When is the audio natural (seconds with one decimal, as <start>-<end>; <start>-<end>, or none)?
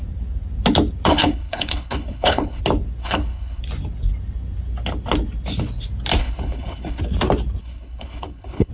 0.0-1.1; 2.6-3.0; 3.6-6.2; 7.0-7.6